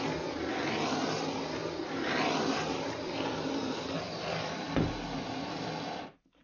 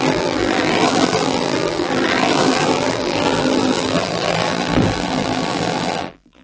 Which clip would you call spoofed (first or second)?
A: second